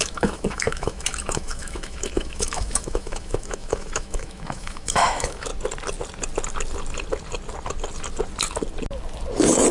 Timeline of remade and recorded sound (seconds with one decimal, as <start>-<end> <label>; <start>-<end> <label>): 0.0-5.5 remade; 5.5-9.7 recorded